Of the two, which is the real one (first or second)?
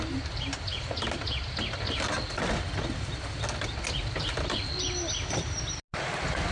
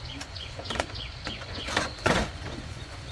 first